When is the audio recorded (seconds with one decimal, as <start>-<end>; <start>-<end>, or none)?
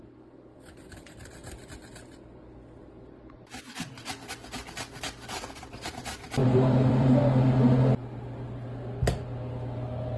0.0-6.4; 7.2-10.2